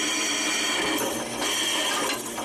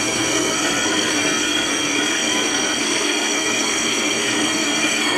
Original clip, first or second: first